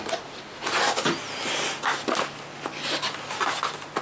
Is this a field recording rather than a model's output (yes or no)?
yes